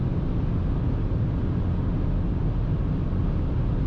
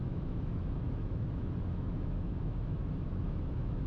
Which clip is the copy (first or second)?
second